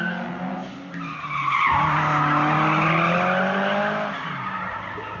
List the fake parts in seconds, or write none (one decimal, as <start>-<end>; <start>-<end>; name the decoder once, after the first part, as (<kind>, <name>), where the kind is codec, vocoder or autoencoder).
none